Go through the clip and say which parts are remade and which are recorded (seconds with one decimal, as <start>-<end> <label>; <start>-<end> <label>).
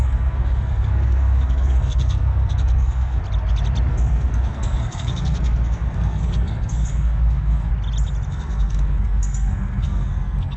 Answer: 0.0-3.2 remade; 3.2-3.9 recorded; 3.9-7.7 remade; 7.7-8.3 recorded; 8.3-10.6 remade